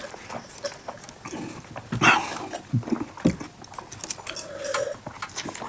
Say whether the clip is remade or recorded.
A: recorded